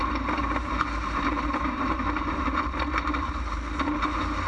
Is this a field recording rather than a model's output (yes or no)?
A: yes